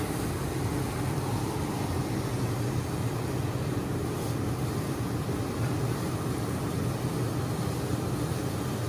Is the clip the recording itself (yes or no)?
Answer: yes